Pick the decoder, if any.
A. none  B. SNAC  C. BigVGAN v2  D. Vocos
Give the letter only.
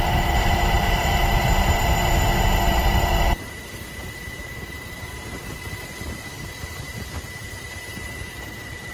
C